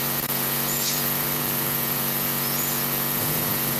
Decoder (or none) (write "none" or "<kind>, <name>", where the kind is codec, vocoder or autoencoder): vocoder, Vocos